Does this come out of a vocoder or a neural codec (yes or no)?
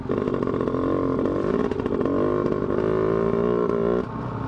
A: no